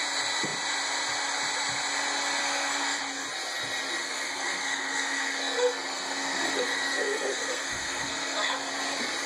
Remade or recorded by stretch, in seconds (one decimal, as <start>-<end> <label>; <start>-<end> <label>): 0.0-2.4 recorded; 2.4-3.0 remade; 3.0-4.0 recorded; 4.0-8.7 remade; 8.7-9.3 recorded